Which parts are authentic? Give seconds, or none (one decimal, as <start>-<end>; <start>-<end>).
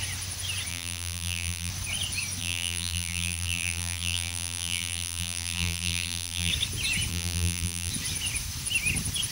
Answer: 0.0-0.7; 1.7-2.4; 6.5-7.1; 7.9-9.3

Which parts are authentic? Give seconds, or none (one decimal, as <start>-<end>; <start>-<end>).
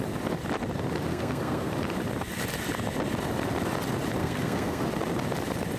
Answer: 0.0-1.1; 1.7-4.2; 4.8-5.8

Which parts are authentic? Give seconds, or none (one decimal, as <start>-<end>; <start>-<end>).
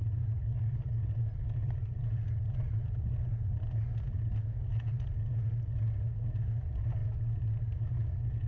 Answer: 0.0-8.5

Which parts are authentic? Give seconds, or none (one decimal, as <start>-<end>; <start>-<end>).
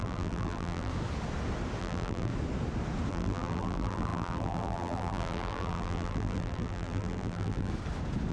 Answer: 0.9-1.8; 2.3-3.1; 7.7-8.3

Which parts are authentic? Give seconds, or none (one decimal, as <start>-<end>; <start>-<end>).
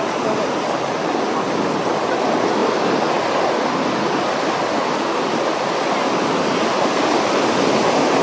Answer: 0.0-8.2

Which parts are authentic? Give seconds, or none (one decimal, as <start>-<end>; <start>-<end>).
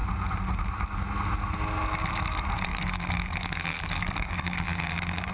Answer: 0.0-2.7